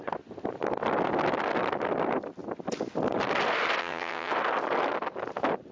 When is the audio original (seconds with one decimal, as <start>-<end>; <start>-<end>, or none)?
0.0-3.8; 4.3-5.7

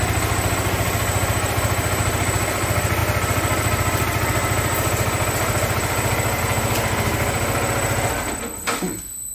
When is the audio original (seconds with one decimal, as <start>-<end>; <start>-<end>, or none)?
0.0-9.3